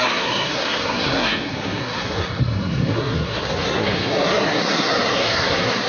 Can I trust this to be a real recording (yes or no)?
no